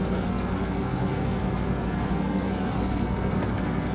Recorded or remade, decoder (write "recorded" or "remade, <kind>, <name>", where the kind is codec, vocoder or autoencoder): remade, codec, SNAC